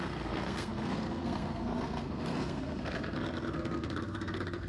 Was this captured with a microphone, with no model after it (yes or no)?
no